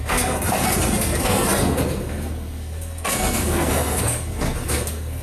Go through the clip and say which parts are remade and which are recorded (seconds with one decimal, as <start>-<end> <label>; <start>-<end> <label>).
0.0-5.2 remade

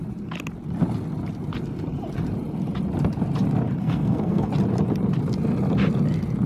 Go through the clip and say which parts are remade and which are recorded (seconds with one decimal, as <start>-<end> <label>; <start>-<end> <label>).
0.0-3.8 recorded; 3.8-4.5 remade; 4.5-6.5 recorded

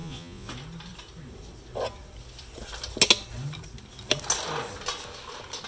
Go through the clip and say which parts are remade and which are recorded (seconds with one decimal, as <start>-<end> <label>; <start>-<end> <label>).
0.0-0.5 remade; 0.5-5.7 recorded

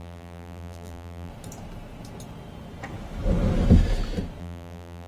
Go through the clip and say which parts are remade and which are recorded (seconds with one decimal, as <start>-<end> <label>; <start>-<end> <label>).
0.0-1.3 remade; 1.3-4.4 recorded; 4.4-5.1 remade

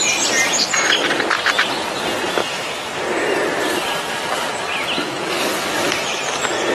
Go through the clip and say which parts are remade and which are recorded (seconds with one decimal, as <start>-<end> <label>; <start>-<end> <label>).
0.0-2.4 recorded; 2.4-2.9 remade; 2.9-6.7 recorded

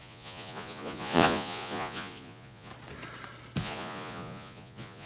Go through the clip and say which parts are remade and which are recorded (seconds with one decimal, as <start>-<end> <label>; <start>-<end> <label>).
0.0-2.7 remade; 2.7-3.6 recorded; 3.6-5.1 remade

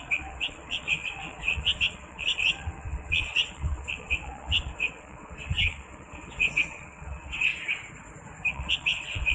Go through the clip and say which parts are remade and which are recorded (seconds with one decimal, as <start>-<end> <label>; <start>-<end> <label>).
0.0-7.5 remade; 7.5-8.5 recorded; 8.5-9.3 remade